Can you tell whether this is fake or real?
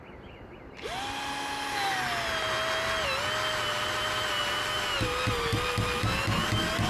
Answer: real